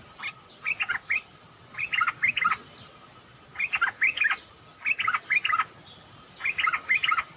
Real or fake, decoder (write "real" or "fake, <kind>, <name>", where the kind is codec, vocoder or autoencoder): real